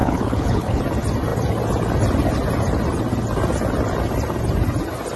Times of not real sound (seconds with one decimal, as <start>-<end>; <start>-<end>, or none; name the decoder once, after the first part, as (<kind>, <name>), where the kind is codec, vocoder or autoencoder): 0.0-0.8 (codec, HILCodec)